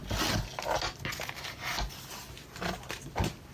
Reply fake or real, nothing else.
real